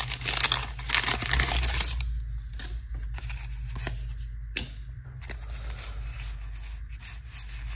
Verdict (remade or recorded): recorded